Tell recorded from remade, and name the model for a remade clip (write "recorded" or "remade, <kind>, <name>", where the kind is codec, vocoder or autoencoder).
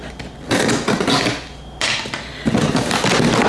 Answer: recorded